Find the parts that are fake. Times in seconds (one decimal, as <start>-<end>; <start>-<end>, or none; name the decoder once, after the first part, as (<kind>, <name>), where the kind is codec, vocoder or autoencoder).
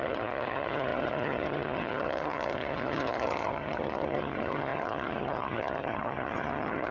0.0-6.9 (vocoder, HiFi-GAN)